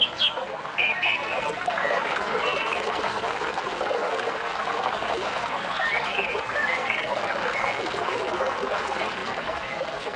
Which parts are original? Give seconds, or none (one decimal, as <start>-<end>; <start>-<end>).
none